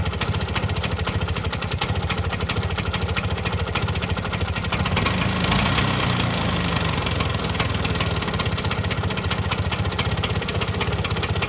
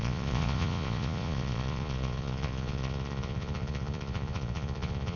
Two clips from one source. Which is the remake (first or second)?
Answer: second